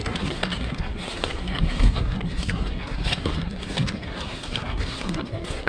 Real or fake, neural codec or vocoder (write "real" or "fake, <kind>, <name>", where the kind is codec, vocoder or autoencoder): fake, codec, SNAC